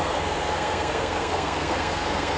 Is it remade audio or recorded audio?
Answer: remade